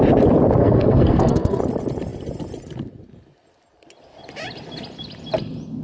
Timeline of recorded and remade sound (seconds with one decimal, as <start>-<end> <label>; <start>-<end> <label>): 0.0-0.6 recorded; 0.6-1.6 remade; 1.6-5.8 recorded